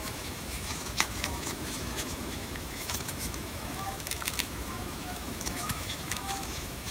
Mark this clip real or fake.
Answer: fake